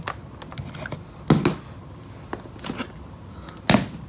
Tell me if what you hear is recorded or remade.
recorded